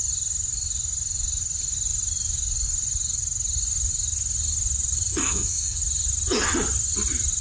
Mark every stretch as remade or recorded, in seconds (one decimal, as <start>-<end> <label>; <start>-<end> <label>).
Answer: 0.0-5.1 recorded; 5.1-5.8 remade; 5.8-7.4 recorded